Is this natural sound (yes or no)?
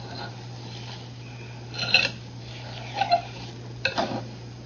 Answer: yes